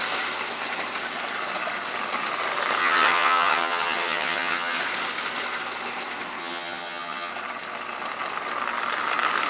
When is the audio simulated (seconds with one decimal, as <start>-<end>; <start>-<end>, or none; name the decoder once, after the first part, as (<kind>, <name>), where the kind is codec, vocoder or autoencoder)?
2.8-4.8 (vocoder, HiFi-GAN); 6.4-7.3

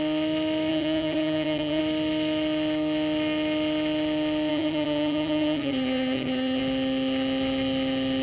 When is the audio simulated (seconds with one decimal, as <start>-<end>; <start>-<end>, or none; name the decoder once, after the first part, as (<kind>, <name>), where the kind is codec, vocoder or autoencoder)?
0.7-1.8 (vocoder, HiFi-GAN); 4.5-6.6

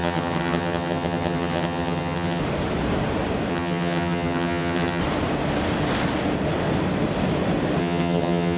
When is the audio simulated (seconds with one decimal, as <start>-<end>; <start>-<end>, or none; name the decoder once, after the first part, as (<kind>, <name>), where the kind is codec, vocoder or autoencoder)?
0.0-2.4 (vocoder, HiFi-GAN); 3.5-5.0; 7.8-8.6

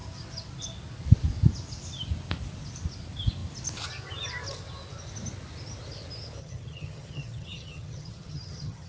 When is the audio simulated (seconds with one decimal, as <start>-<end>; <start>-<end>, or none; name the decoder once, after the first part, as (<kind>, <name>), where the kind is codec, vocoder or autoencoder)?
6.4-8.9 (vocoder, HiFi-GAN)

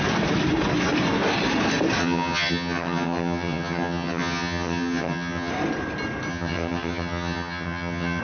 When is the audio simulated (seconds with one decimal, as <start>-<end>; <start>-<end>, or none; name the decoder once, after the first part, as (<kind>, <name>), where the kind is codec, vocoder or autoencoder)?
2.0-5.5 (vocoder, HiFi-GAN); 6.3-8.2

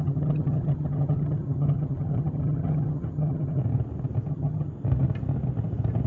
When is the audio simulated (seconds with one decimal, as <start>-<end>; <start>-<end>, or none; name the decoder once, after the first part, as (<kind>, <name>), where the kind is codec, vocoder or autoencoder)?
0.0-3.6 (vocoder, HiFi-GAN); 4.3-4.7